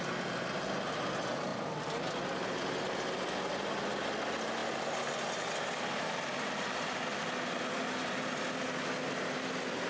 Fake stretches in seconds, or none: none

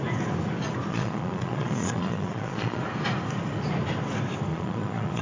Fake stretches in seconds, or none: 0.9-2.8 (vocoder, Vocos); 4.5-5.2

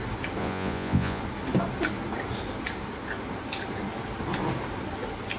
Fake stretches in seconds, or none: 0.4-1.2 (vocoder, Vocos)

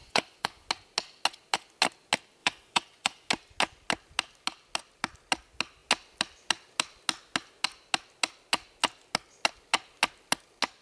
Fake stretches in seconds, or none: 0.0-0.7 (vocoder, Vocos); 2.4-3.3

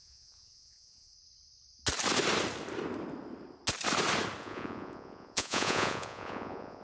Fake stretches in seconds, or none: 0.0-1.1 (vocoder, Vocos); 4.4-6.8